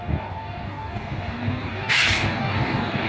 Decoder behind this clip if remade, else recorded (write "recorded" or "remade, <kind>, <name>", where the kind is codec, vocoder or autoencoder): remade, codec, DAC